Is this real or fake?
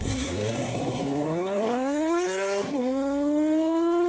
fake